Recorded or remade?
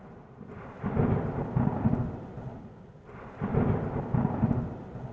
recorded